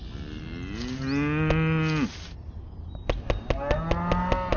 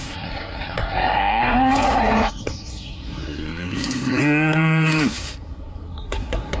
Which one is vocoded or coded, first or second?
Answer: second